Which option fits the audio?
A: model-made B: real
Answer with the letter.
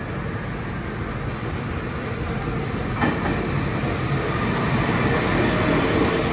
B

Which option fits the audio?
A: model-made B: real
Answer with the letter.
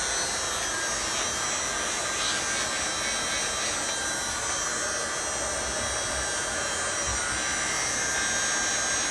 B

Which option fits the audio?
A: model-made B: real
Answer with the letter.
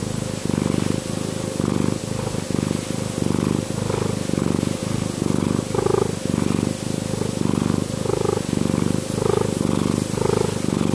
B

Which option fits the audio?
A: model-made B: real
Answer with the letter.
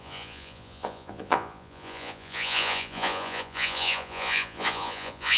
A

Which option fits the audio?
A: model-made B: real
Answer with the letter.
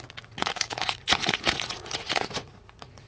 A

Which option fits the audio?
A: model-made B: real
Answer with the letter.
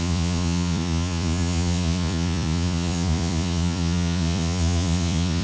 A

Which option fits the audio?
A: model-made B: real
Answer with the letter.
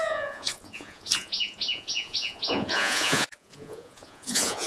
A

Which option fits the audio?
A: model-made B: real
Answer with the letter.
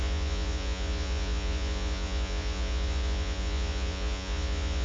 A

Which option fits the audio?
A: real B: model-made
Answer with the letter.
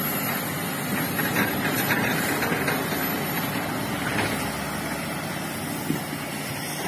A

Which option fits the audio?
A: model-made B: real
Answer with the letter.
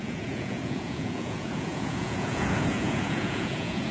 A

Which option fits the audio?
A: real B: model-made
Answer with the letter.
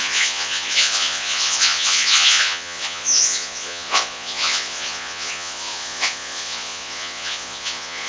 B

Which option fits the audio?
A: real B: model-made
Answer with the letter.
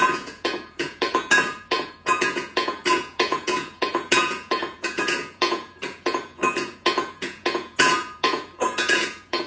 B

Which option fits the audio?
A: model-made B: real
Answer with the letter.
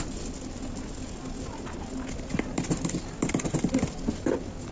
B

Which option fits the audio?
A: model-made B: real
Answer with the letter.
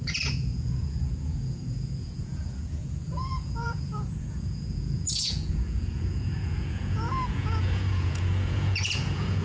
A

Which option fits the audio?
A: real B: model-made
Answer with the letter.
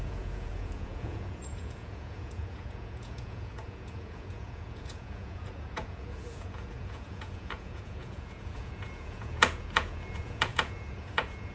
B